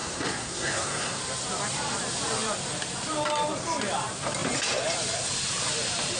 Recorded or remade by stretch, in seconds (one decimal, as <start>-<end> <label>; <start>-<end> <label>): 0.0-1.2 remade; 1.2-6.2 recorded